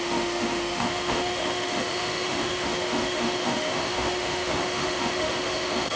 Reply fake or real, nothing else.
fake